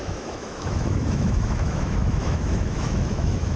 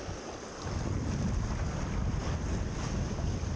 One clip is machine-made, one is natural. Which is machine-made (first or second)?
first